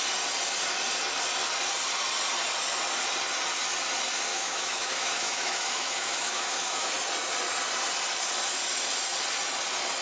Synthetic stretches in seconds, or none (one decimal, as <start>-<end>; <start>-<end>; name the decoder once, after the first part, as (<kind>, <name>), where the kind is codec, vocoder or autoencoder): 4.3-6.9 (autoencoder, DAC-VAE)